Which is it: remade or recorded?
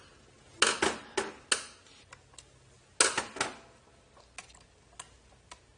recorded